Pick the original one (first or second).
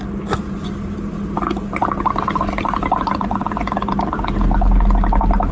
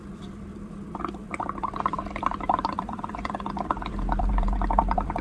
first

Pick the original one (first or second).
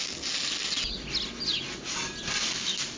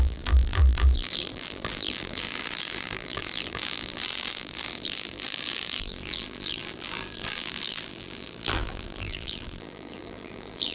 first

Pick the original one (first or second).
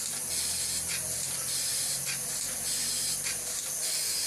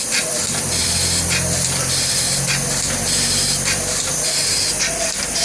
first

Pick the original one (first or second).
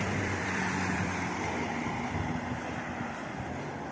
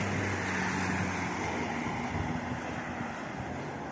second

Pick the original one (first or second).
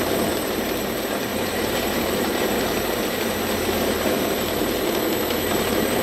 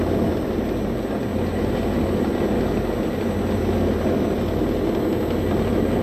second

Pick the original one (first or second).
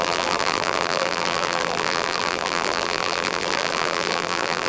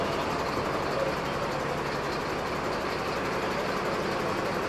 second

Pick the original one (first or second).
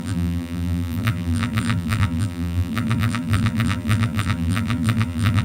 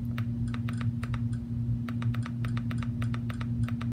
second